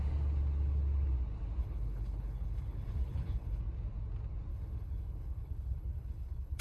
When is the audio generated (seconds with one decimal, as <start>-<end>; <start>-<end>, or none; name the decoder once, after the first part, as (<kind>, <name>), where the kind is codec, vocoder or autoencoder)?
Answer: 1.6-3.6 (codec, HILCodec); 4.5-6.6